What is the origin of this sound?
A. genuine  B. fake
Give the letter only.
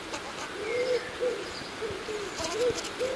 A